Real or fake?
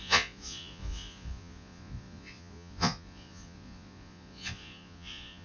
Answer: fake